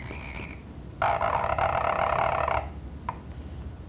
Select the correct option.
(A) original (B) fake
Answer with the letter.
A